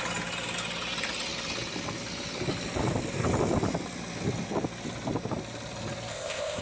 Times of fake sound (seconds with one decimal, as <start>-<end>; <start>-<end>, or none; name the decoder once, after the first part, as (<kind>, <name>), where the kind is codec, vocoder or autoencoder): 6.1-6.6 (codec, ZipCodec)